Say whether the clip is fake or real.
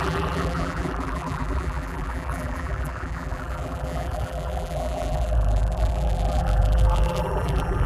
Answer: fake